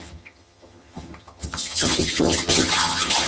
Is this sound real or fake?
fake